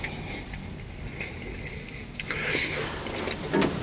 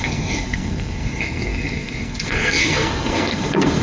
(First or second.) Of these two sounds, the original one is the first